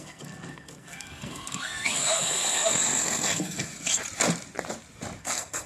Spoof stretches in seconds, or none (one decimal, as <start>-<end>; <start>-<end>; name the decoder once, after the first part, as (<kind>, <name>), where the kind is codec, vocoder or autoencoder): 0.0-4.0 (codec, SNAC); 5.2-5.7